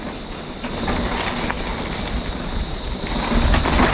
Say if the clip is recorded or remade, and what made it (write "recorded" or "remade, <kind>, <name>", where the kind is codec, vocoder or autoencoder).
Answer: recorded